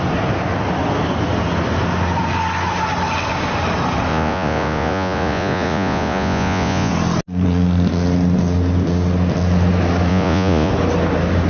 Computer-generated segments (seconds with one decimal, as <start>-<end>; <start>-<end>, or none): 4.1-6.9; 10.1-10.7